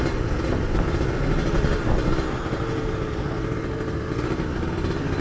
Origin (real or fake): real